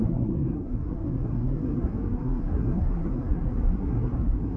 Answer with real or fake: fake